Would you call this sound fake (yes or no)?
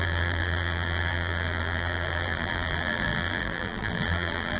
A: yes